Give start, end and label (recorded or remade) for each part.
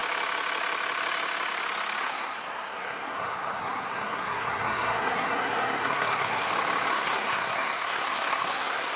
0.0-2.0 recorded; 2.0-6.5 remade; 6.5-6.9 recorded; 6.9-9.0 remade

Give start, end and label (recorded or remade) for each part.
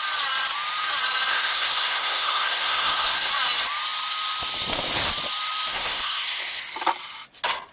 0.0-1.3 recorded; 1.3-3.3 remade; 3.3-5.7 recorded; 5.7-6.6 remade; 6.6-7.7 recorded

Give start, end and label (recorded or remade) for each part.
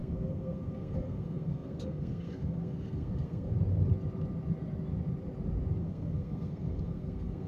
0.0-3.5 remade; 3.5-5.8 recorded; 5.8-7.5 remade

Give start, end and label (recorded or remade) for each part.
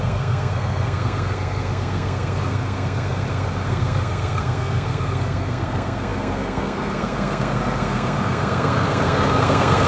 0.0-9.9 remade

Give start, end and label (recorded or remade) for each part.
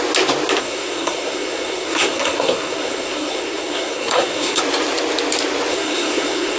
0.0-0.6 recorded; 0.6-4.6 remade; 4.6-5.7 recorded; 5.7-6.6 remade